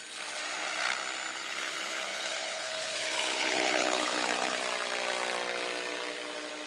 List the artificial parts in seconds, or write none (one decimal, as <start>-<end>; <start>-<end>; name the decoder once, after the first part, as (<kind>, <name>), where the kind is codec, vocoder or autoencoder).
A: 1.3-4.6 (codec, HILCodec)